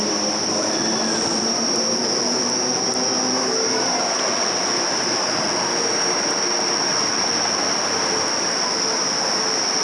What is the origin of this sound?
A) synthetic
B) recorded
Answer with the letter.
B